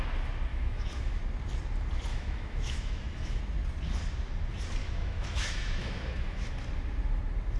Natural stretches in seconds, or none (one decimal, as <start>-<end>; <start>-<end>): 0.0-0.5; 1.2-2.1; 3.4-4.8; 6.5-7.6